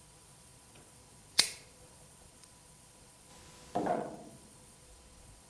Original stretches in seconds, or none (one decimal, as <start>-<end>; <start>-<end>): 3.3-3.9